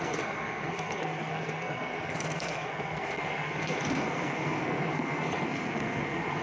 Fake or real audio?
fake